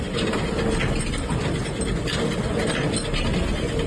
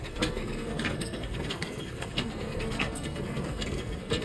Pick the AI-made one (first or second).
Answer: second